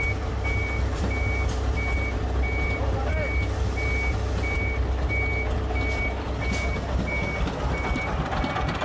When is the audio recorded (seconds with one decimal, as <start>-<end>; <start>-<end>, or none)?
0.0-8.8